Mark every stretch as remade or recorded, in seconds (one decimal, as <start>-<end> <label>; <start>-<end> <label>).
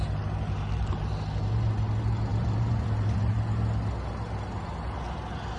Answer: 0.0-2.3 recorded; 2.3-3.3 remade; 3.3-5.6 recorded